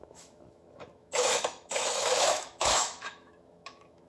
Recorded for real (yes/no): no